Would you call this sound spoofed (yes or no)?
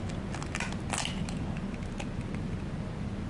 no